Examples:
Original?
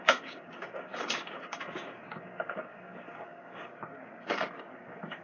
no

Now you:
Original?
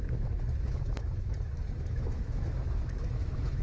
no